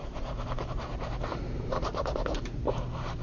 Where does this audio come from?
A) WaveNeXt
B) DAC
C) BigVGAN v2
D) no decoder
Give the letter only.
C